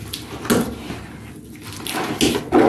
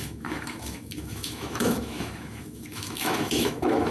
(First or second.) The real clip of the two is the first